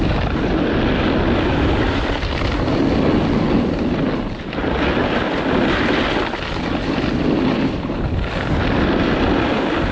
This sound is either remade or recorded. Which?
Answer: recorded